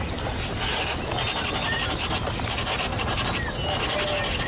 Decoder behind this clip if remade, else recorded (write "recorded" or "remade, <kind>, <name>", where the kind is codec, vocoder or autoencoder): recorded